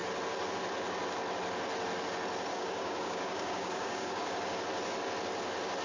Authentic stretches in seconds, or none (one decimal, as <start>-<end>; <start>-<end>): 0.0-2.5; 4.6-5.8